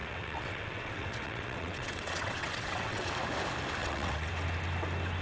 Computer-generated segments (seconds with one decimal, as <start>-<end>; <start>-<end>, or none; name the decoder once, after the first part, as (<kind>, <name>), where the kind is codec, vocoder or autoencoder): 0.0-3.1 (vocoder, WaveNeXt); 3.8-4.3